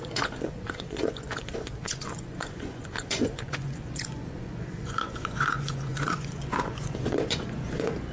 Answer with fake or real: fake